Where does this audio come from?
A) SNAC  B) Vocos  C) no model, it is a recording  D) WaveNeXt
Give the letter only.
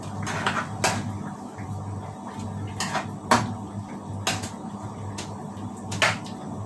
C